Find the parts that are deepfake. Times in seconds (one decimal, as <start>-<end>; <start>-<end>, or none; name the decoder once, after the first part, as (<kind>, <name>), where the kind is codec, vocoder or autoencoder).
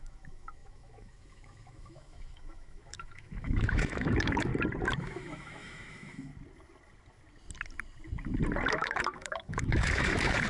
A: 0.0-4.5 (autoencoder, DAC-VAE); 5.0-6.3; 8.7-10.5